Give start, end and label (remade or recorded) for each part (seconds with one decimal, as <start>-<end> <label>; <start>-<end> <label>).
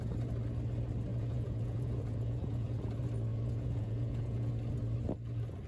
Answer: 0.0-1.1 recorded; 1.1-2.8 remade; 2.8-3.3 recorded; 3.3-4.5 remade; 4.5-5.7 recorded